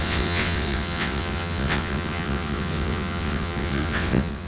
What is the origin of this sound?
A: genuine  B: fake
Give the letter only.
B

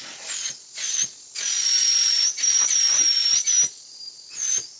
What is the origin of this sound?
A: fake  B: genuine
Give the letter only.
B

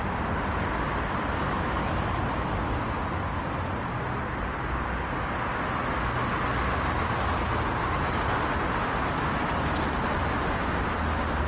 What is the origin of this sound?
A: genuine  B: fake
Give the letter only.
A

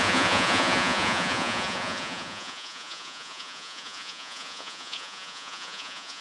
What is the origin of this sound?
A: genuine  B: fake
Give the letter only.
B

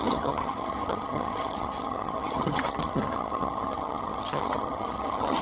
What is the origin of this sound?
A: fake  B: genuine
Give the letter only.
A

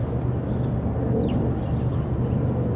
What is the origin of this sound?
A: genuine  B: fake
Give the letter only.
A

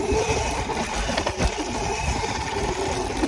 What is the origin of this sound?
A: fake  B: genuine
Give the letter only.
A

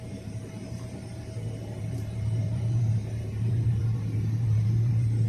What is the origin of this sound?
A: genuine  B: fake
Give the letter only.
B